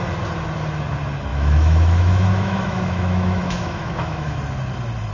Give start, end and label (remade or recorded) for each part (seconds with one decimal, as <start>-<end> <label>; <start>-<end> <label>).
0.0-1.3 recorded; 1.3-4.4 remade; 4.4-5.1 recorded